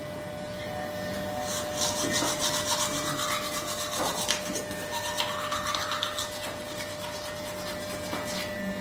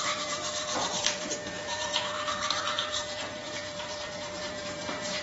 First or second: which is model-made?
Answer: second